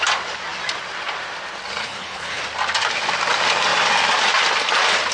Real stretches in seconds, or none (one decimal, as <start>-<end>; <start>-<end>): 0.0-1.8; 2.4-5.1